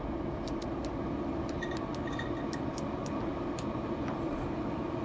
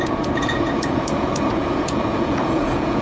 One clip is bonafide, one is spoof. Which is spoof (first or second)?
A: second